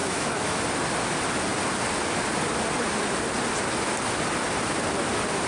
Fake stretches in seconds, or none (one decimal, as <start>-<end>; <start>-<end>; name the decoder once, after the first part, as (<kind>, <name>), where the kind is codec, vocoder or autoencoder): 0.0-0.6 (autoencoder, DAC-VAE)